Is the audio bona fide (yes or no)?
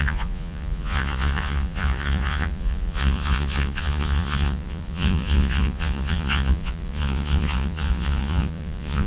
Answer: no